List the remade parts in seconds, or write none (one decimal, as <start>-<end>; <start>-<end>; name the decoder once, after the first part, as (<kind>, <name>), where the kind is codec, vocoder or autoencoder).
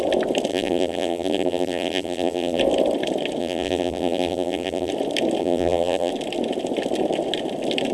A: 0.5-2.6 (vocoder, BigVGAN v2); 3.4-4.9; 5.4-6.1